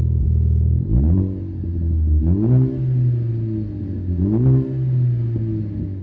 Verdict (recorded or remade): recorded